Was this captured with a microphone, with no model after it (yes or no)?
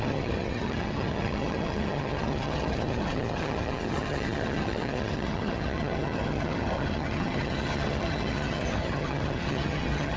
no